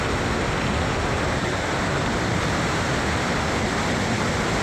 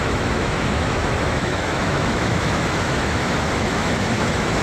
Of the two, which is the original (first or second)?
first